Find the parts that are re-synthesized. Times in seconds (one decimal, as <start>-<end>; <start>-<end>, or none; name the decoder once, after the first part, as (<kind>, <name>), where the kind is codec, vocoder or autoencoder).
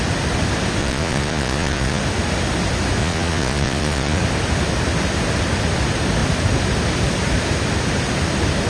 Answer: 0.8-2.0 (vocoder, Vocos); 3.0-4.2